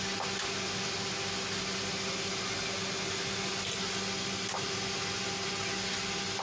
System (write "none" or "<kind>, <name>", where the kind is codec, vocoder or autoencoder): none